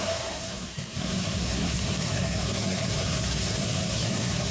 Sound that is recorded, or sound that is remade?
remade